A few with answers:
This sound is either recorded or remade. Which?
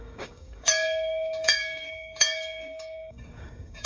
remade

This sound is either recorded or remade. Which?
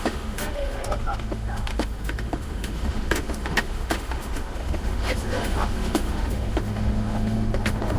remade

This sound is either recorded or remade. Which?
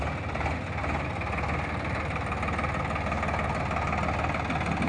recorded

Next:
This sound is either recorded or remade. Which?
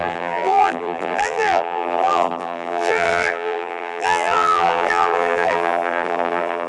remade